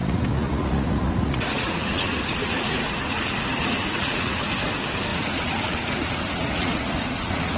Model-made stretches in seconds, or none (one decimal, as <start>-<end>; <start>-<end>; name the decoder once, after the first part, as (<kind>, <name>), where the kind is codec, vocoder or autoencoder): 0.0-4.5 (vocoder, Vocos); 5.1-7.6